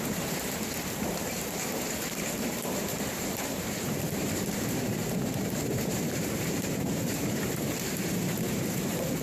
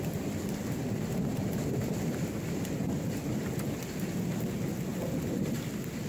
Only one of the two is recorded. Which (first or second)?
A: second